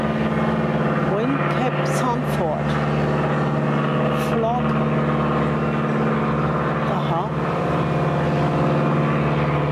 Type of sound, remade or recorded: recorded